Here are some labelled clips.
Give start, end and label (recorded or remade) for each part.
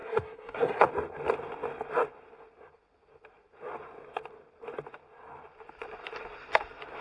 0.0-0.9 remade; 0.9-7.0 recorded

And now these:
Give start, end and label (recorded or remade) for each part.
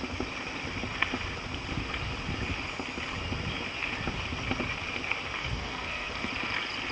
0.0-5.4 recorded; 5.4-6.3 remade; 6.3-6.9 recorded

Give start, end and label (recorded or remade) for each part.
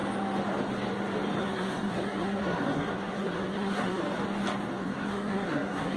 0.0-1.4 recorded; 1.4-4.0 remade; 4.0-4.8 recorded; 4.8-6.0 remade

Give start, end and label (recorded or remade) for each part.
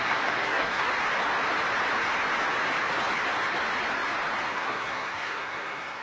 0.0-0.9 remade; 0.9-4.5 recorded; 4.5-6.0 remade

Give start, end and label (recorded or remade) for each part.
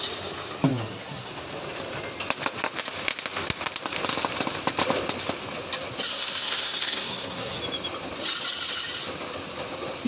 0.0-0.7 recorded; 0.7-1.3 remade; 1.3-6.1 recorded; 6.1-7.6 remade; 7.6-10.1 recorded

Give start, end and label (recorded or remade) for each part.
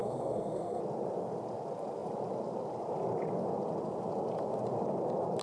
0.0-0.8 remade; 0.8-5.4 recorded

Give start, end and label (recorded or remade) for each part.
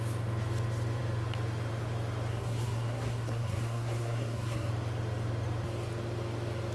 0.0-2.3 recorded; 2.3-4.7 remade; 4.7-6.7 recorded